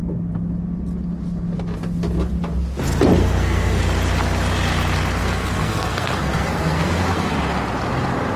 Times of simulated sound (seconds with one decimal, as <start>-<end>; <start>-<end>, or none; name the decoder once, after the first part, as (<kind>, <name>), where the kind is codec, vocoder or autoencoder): 3.2-3.8 (codec, SNAC); 5.2-7.3